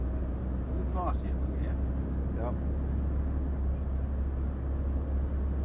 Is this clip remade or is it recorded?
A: recorded